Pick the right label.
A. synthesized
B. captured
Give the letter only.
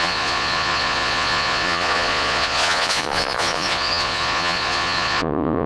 A